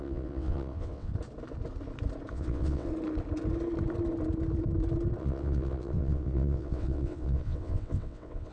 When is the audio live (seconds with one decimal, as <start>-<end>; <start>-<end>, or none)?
1.1-2.3; 2.9-5.2